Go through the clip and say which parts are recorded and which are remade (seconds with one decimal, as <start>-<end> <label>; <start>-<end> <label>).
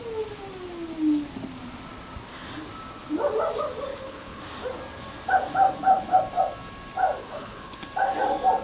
0.0-3.9 recorded; 3.9-4.4 remade; 4.4-7.2 recorded; 7.2-7.8 remade; 7.8-8.6 recorded